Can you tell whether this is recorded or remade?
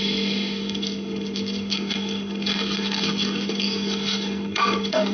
remade